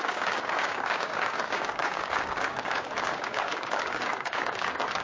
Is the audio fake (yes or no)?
yes